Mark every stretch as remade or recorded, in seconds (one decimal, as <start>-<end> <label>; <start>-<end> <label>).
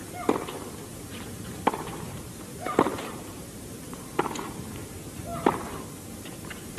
0.0-0.9 recorded; 0.9-4.2 remade; 4.2-6.8 recorded